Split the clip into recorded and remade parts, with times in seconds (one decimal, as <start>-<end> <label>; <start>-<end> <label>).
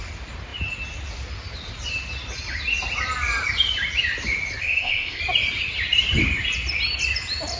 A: 0.0-4.6 recorded; 4.6-5.2 remade; 5.2-7.6 recorded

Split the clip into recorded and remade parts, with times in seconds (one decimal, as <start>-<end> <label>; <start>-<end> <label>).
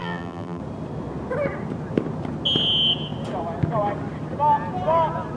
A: 0.0-0.6 remade; 0.6-5.4 recorded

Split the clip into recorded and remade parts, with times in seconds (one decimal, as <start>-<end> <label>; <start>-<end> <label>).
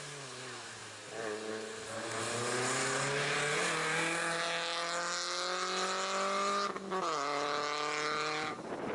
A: 0.0-8.9 recorded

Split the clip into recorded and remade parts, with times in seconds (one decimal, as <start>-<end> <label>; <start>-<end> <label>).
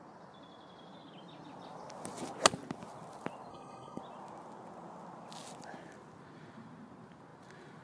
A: 0.0-3.5 recorded; 3.5-4.0 remade; 4.0-7.8 recorded